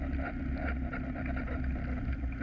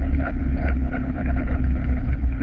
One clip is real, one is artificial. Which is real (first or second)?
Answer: first